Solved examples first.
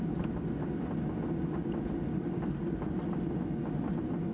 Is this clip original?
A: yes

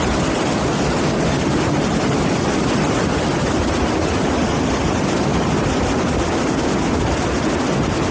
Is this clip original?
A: yes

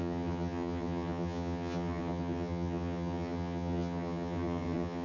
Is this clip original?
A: no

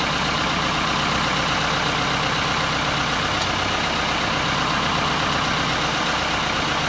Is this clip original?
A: yes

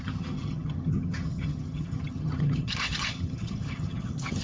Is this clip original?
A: no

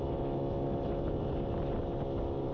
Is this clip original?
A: yes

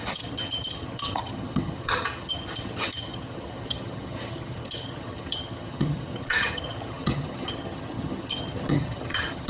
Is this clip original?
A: no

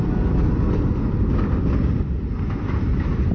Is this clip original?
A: yes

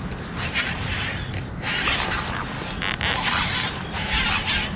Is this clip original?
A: yes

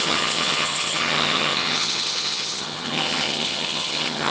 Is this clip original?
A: no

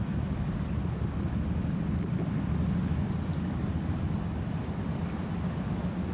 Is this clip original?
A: yes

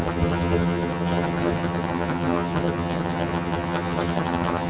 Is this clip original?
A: no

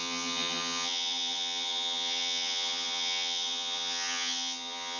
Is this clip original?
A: no